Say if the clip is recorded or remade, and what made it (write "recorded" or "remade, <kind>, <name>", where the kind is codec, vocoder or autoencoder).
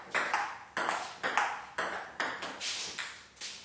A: recorded